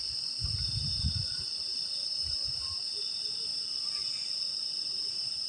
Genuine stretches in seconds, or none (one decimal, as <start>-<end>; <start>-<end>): 3.5-4.6